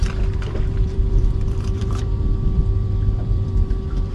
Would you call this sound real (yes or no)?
no